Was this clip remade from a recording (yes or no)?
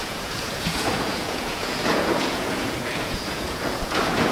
yes